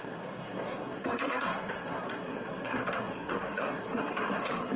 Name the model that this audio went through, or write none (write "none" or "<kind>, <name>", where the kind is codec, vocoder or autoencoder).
codec, SNAC